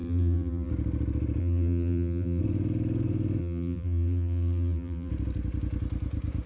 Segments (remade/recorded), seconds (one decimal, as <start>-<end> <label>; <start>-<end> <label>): 0.0-0.7 remade; 0.7-1.4 recorded; 1.4-2.4 remade; 2.4-3.4 recorded; 3.4-5.1 remade; 5.1-6.5 recorded